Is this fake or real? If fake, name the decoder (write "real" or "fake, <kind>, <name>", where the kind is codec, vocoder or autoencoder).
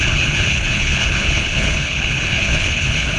fake, codec, HILCodec